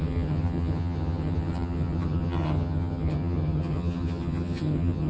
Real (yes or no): no